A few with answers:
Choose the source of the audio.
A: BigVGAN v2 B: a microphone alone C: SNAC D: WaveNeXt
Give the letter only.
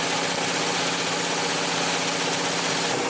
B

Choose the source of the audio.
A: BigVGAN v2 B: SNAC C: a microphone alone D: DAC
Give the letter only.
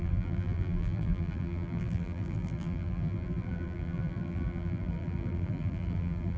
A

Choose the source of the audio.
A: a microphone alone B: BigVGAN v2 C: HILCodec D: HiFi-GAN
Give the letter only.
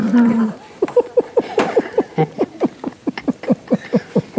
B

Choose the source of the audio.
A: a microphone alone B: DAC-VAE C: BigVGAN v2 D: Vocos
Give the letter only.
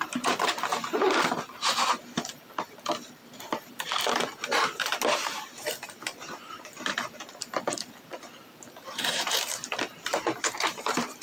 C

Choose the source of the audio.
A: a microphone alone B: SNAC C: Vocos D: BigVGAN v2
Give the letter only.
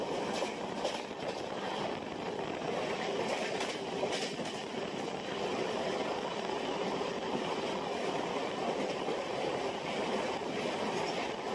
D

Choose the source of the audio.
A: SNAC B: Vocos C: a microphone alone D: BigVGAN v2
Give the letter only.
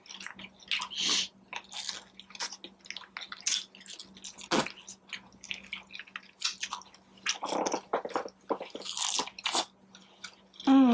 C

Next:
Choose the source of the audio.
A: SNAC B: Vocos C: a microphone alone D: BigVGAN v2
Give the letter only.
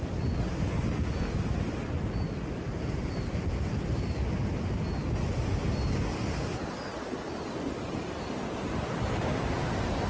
C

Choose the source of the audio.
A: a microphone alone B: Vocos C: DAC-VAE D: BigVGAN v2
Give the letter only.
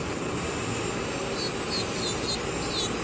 A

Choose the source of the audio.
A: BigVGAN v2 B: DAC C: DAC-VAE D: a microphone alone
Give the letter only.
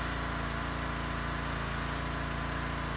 D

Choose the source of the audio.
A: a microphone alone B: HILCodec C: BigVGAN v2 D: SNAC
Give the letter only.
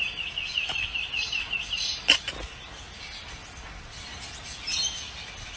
A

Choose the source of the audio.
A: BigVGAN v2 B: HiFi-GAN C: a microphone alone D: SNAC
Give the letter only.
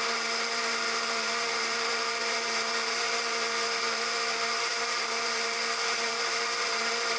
A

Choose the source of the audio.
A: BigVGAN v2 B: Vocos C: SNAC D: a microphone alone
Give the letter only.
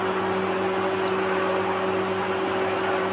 D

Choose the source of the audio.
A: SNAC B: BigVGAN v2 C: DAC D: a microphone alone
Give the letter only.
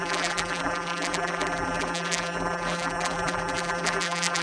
B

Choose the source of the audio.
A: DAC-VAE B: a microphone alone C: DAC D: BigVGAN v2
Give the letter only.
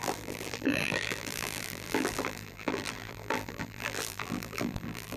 D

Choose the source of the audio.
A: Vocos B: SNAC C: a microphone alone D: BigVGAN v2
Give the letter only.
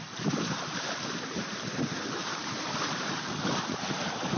D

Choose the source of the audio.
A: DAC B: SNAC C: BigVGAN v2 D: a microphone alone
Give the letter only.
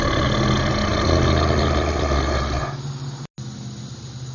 D